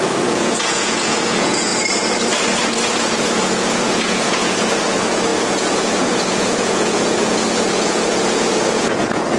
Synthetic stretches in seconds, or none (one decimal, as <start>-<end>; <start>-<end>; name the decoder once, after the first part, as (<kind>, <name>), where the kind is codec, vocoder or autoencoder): 0.0-1.7 (vocoder, Vocos); 2.9-9.4